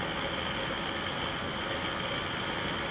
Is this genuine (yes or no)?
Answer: yes